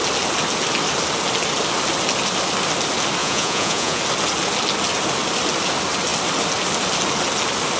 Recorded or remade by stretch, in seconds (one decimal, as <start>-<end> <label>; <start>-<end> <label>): 0.0-3.2 recorded; 3.2-4.0 remade; 4.0-7.8 recorded